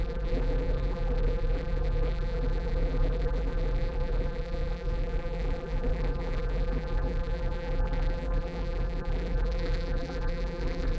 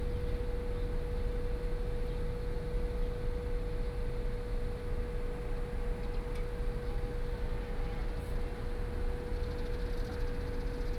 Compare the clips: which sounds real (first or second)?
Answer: second